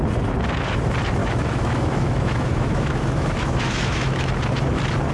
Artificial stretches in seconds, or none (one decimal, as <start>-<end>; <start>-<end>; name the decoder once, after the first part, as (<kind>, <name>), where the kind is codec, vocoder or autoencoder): 1.2-4.3 (autoencoder, DAC-VAE)